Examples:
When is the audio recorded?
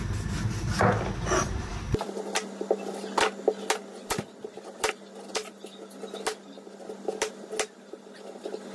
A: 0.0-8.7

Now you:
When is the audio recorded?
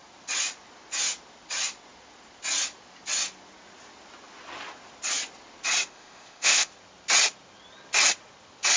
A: 0.0-5.9; 6.7-8.8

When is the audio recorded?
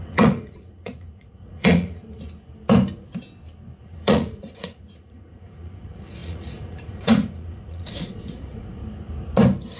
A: 2.0-3.8; 8.8-9.8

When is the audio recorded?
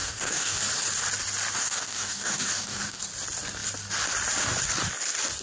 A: 0.6-1.6; 3.0-5.4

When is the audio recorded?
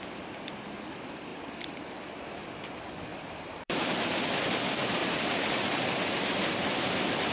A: 0.0-1.3; 1.9-3.1; 4.3-5.0; 5.8-7.3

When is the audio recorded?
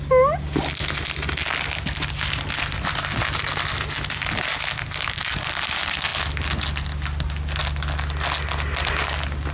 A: 0.0-9.5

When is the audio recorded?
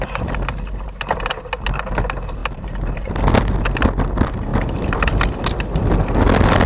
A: 0.0-6.7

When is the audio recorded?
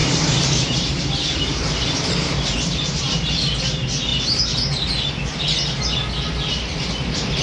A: 3.0-7.4